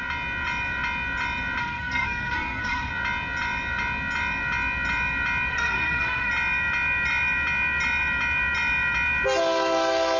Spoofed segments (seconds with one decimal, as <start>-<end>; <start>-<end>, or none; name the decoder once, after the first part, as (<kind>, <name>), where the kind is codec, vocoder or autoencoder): 1.6-2.9 (codec, SNAC); 5.5-6.3